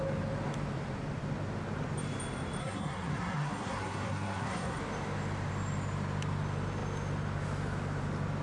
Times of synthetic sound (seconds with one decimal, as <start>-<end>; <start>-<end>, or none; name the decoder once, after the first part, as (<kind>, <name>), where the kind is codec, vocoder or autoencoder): 2.6-4.8 (codec, SNAC)